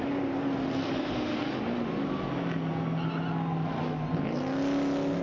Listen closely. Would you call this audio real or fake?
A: real